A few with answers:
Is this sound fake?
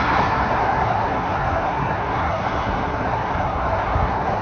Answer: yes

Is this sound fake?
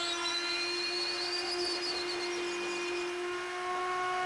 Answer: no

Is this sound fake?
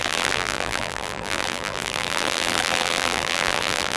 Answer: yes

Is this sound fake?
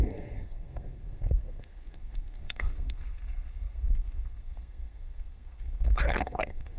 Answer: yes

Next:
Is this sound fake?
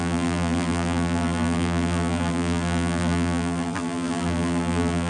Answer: yes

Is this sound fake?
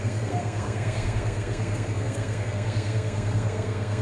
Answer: yes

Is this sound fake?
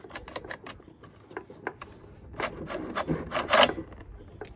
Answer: no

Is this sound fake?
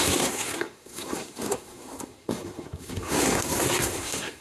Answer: yes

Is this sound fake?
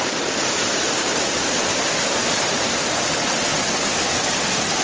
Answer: no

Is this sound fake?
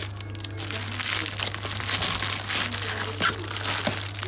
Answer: no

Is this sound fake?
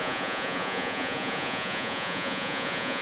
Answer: yes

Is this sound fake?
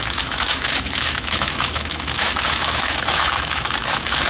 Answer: yes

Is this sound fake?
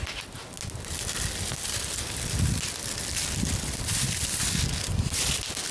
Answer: no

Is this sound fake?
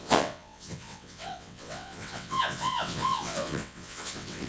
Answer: yes